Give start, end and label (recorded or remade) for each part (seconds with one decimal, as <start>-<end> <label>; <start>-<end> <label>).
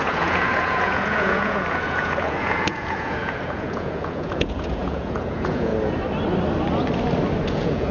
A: 0.0-5.7 remade; 5.7-7.5 recorded; 7.5-7.9 remade